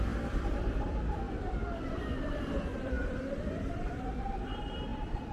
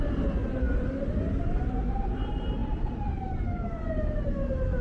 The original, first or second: second